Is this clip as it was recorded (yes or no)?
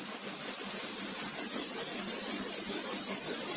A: yes